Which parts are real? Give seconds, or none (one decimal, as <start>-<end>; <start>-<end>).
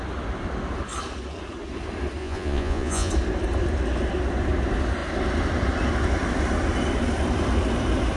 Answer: 0.0-2.2; 3.1-8.2